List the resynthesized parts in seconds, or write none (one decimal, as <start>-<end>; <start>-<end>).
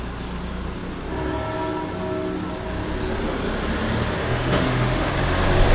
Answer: 4.2-5.1